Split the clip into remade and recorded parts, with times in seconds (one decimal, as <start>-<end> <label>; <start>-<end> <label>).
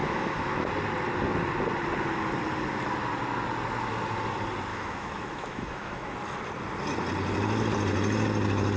0.0-0.7 remade; 0.7-4.7 recorded; 4.7-6.1 remade; 6.1-8.8 recorded